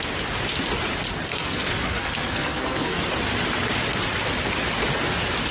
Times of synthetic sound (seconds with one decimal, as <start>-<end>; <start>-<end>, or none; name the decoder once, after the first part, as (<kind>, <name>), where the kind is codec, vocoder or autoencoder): 1.3-3.0 (codec, SNAC)